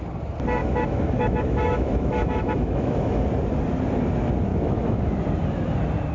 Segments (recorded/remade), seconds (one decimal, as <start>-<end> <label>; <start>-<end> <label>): 0.0-0.6 recorded; 0.6-3.2 remade; 3.2-4.5 recorded; 4.5-5.0 remade; 5.0-6.1 recorded